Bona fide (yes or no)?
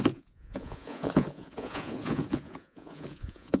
no